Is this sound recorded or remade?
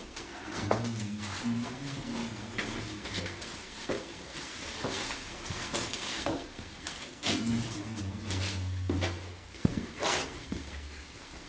remade